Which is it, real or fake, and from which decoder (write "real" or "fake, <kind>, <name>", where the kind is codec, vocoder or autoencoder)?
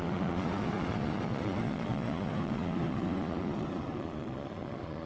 fake, vocoder, Vocos